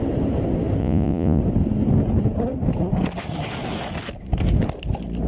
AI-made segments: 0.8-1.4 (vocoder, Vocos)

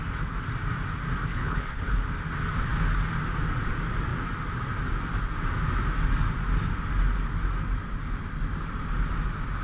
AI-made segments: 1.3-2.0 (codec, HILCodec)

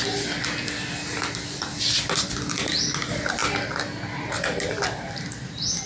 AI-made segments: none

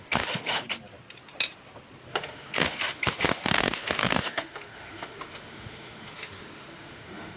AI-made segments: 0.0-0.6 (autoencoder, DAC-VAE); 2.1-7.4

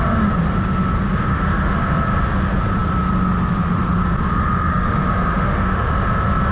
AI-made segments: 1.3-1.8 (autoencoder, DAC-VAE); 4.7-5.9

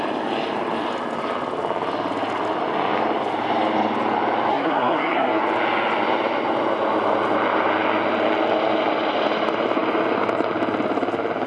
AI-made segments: 4.5-5.4 (codec, SNAC)